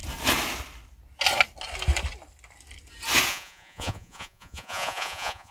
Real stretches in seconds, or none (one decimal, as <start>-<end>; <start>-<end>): 0.0-3.3